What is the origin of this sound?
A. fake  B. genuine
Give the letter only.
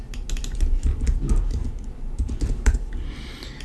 B